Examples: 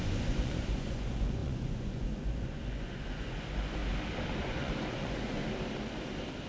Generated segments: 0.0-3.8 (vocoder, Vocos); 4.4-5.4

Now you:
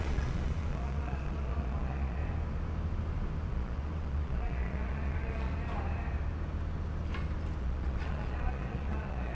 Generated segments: 0.0-2.2 (vocoder, Vocos); 3.5-5.5; 7.6-9.3

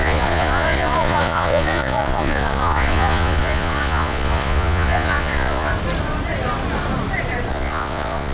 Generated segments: 0.0-5.7 (vocoder, Vocos); 7.5-8.3

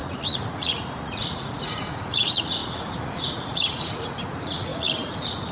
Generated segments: 0.0-5.5 (vocoder, Vocos)

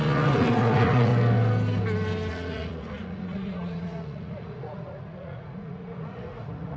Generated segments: 0.0-1.1 (vocoder, Vocos); 2.3-6.8